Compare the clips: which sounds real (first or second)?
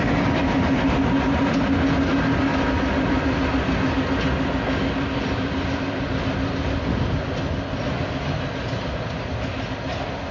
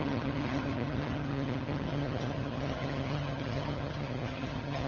first